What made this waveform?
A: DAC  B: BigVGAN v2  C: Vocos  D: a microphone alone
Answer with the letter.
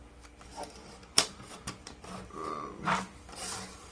B